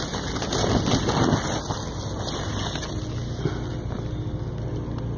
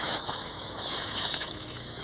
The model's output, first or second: second